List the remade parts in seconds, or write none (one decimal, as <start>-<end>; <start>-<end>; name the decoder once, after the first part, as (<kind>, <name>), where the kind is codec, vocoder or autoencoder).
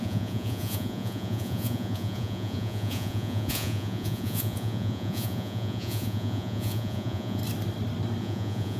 0.0-7.4 (vocoder, Vocos); 8.2-8.8